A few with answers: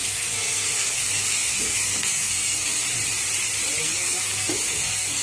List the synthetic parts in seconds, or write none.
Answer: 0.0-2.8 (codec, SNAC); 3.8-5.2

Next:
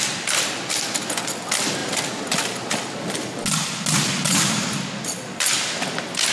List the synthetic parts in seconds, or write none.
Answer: none

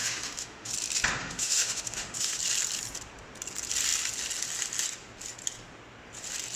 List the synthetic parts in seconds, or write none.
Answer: 0.0-0.7 (autoencoder, DAC-VAE); 1.2-2.4

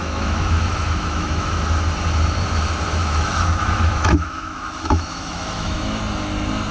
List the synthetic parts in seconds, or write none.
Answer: 0.0-1.5 (autoencoder, DAC-VAE); 3.0-6.0

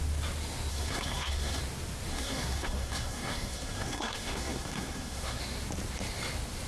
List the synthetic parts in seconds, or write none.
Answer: 0.7-1.6 (codec, SNAC); 2.1-5.4

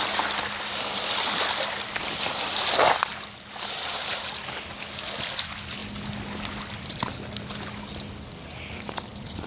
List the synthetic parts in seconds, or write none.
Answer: none

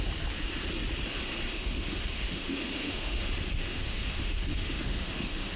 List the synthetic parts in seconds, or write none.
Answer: 1.5-3.2 (autoencoder, DAC-VAE); 3.7-5.6

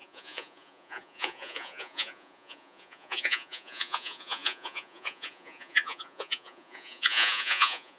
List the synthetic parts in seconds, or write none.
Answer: 0.0-8.0 (vocoder, Vocos)